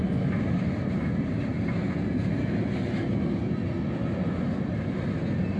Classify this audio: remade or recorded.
recorded